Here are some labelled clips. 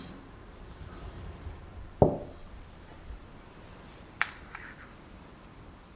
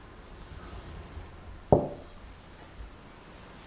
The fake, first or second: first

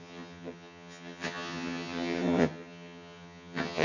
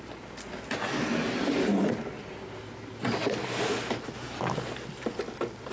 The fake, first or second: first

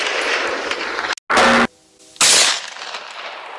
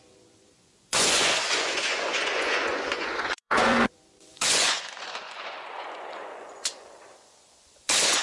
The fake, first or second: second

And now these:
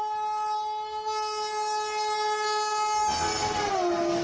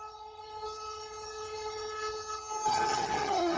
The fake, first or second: second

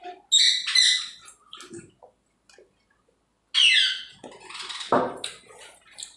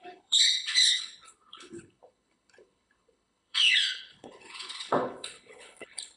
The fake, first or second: second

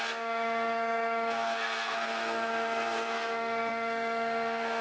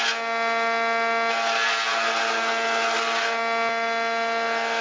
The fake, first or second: first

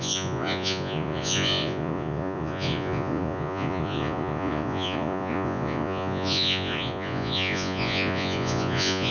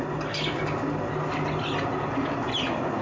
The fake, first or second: first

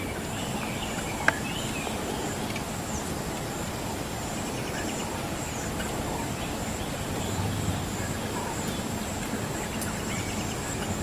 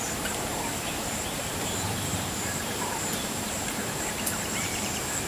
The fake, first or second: second